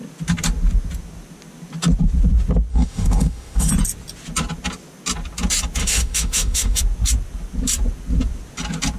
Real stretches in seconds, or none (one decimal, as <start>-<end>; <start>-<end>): 0.0-2.7; 3.7-5.8; 6.8-9.0